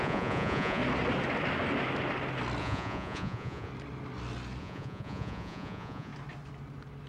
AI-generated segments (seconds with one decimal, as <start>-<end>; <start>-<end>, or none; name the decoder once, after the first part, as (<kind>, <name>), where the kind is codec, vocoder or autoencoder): 0.0-0.8 (vocoder, Vocos); 2.6-3.7; 4.6-6.1